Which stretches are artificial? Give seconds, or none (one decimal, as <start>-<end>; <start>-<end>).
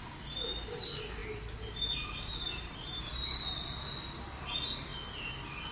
none